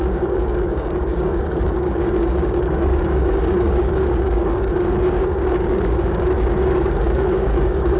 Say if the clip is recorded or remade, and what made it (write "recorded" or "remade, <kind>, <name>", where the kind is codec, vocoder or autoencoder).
remade, codec, DAC